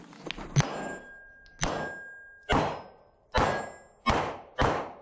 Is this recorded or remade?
recorded